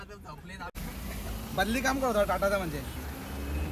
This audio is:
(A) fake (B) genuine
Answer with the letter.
B